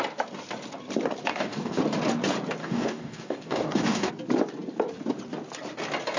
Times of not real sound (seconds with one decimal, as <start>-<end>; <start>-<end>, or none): 1.3-1.8; 2.6-4.1